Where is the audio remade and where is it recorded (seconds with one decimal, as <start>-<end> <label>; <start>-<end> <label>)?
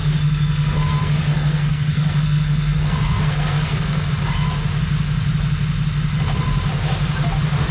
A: 0.0-4.1 remade; 4.1-7.7 recorded